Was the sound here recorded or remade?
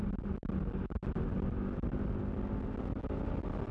recorded